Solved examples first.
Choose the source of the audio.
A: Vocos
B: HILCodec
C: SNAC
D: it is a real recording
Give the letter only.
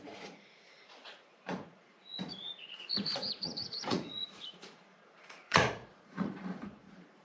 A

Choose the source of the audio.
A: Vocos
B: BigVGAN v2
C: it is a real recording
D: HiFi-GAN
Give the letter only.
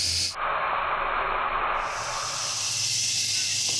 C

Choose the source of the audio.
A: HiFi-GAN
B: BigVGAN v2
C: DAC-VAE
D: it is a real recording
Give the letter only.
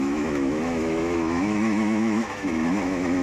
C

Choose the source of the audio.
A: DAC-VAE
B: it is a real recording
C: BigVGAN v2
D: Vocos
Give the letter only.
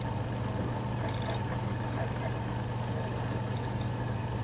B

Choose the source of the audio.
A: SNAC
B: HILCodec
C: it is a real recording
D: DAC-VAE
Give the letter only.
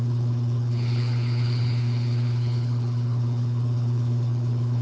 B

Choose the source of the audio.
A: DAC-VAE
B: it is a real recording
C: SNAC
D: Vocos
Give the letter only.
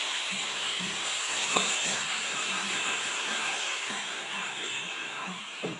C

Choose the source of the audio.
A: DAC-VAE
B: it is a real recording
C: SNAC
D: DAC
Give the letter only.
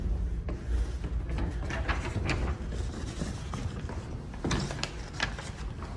B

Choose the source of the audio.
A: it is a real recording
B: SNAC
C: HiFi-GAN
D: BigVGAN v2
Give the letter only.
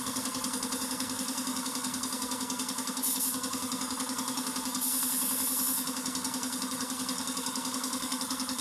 B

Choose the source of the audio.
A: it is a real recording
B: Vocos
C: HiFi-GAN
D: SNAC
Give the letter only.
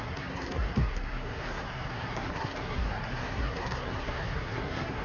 D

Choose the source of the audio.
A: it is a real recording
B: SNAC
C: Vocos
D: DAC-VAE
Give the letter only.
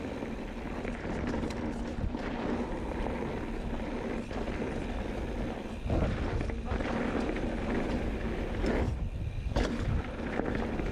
A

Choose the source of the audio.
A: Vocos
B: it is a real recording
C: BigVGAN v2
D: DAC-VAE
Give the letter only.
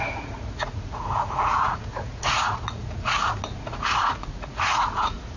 A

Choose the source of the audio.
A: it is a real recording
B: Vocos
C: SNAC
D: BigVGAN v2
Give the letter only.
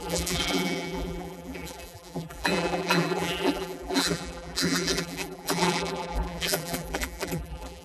D